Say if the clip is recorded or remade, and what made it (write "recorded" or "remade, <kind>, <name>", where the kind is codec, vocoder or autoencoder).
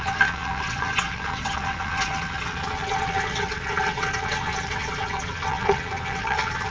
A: remade, vocoder, WaveNeXt